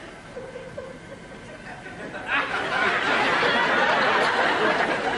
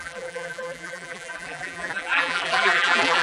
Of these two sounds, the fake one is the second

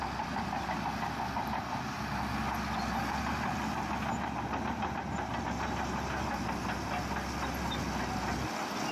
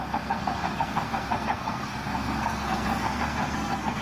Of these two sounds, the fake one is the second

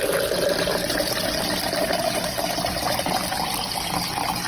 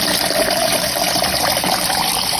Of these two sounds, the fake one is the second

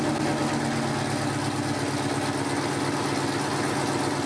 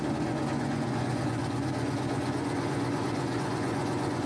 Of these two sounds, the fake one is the second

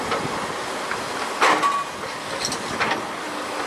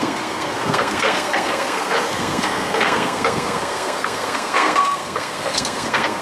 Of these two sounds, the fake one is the second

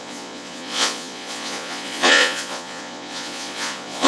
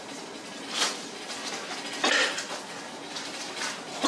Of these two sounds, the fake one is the first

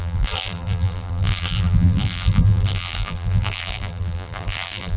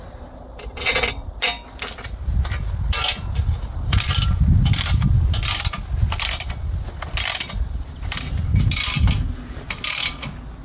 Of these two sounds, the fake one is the first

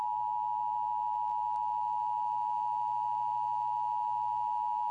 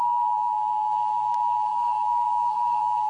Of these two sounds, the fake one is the second